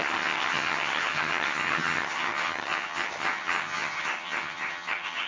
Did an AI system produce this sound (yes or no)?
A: yes